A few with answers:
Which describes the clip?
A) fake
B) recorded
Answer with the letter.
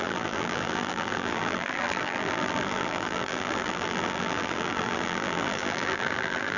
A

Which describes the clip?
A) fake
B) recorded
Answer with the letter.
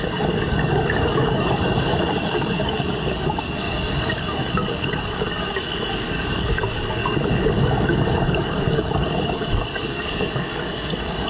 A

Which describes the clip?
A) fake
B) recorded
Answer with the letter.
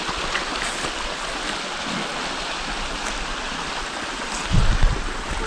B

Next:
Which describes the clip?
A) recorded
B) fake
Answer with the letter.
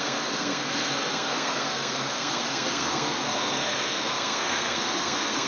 B